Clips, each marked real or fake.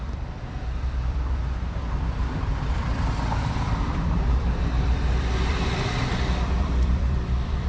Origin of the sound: fake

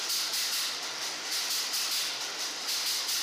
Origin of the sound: real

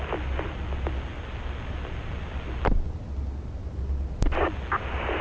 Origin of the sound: real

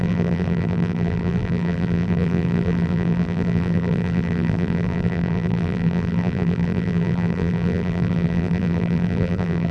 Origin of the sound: fake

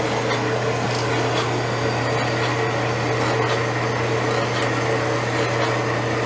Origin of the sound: real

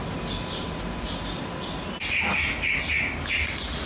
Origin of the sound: real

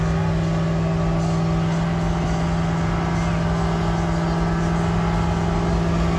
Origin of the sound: real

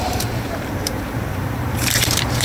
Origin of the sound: fake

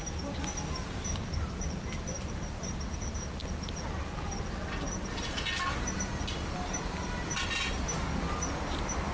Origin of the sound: real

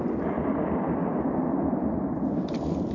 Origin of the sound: fake